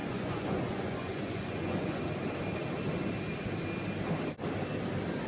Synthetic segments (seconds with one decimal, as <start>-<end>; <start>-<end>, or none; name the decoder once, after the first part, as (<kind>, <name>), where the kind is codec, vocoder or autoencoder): 0.0-2.0 (vocoder, Vocos)